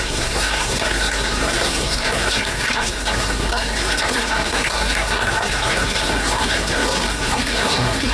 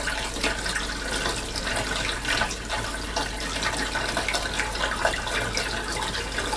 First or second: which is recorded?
second